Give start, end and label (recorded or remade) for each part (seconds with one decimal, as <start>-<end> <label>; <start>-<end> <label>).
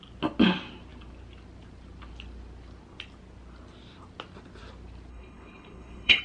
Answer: 0.0-5.1 recorded; 5.1-6.2 remade